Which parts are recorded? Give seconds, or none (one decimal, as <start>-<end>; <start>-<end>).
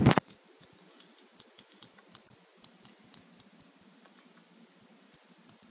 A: none